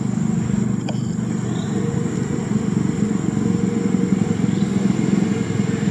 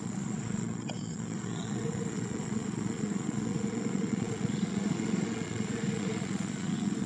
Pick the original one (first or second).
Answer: first